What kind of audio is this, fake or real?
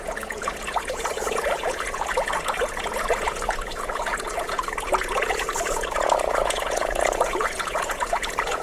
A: fake